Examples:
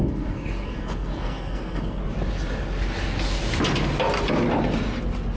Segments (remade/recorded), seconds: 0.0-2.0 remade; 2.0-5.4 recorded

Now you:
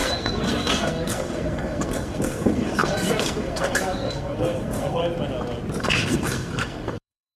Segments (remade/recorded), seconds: 0.0-5.0 remade; 5.0-5.8 recorded; 5.8-7.3 remade

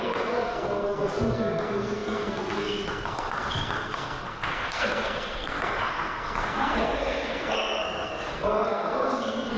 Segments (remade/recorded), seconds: 0.0-9.6 remade

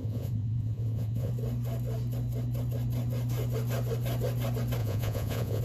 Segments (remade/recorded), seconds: 0.0-1.3 remade; 1.3-4.8 recorded; 4.8-5.6 remade

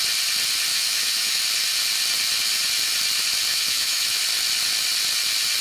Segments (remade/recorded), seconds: 0.0-0.7 recorded; 0.7-1.4 remade; 1.4-3.5 recorded; 3.5-4.2 remade; 4.2-5.6 recorded

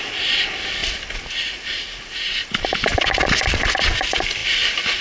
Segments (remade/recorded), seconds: 0.0-5.0 recorded

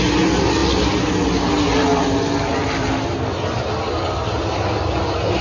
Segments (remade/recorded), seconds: 0.0-1.9 recorded; 1.9-3.9 remade; 3.9-5.4 recorded